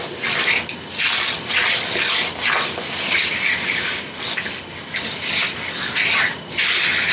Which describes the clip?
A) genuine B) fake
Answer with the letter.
A